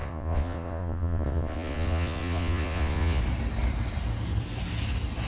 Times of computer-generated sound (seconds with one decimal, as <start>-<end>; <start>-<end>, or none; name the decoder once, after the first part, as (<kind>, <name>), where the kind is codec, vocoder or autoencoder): 0.0-3.2 (vocoder, Vocos)